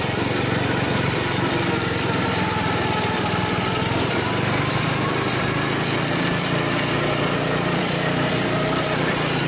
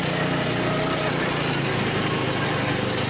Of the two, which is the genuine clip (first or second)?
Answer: second